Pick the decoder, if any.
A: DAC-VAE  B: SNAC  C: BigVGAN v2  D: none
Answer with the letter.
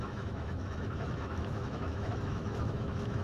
A